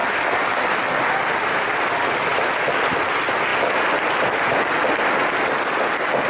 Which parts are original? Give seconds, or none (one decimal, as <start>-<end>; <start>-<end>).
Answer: 0.0-6.3